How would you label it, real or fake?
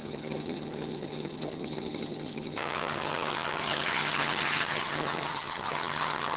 fake